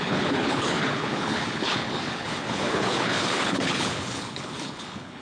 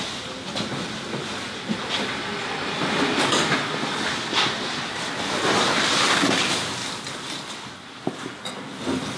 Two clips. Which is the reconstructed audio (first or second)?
first